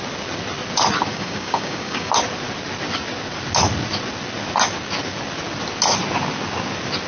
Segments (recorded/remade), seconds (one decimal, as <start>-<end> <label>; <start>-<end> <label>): 0.0-1.1 recorded; 1.1-2.1 remade; 2.1-7.1 recorded